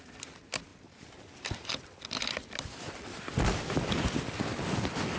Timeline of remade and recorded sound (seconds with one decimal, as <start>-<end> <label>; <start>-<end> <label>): 0.0-5.2 recorded